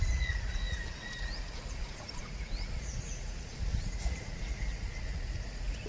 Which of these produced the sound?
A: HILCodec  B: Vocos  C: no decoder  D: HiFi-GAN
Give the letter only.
B